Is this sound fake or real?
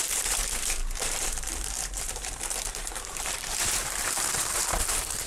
fake